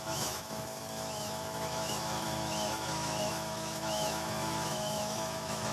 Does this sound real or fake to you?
fake